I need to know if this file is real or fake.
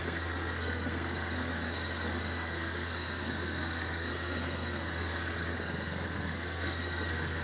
fake